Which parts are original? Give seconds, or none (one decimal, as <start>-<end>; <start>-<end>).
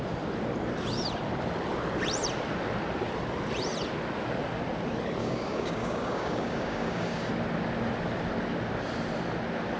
0.0-5.2; 7.3-9.8